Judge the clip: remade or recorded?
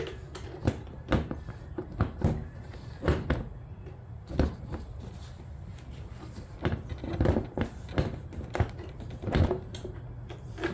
recorded